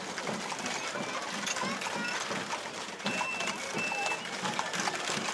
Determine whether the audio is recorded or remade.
recorded